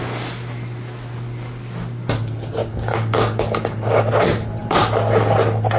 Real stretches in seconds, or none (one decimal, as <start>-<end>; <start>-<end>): 0.0-2.6; 4.1-5.8